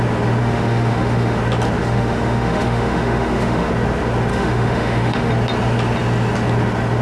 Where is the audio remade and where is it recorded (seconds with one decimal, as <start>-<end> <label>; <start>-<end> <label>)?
0.0-0.4 recorded; 0.4-1.4 remade; 1.4-1.8 recorded; 1.8-3.7 remade; 3.7-4.3 recorded; 4.3-5.3 remade; 5.3-7.0 recorded